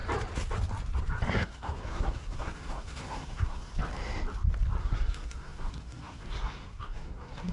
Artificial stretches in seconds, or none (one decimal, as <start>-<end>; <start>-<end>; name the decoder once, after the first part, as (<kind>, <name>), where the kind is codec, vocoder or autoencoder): 1.3-3.7 (codec, SNAC); 4.8-7.5